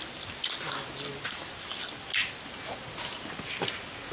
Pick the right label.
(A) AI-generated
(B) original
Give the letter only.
B